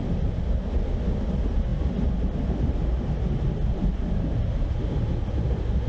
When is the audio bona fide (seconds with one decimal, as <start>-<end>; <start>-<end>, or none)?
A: 0.0-5.9